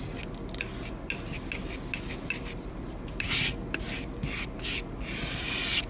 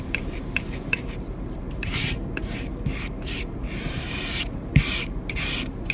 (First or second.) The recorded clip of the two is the first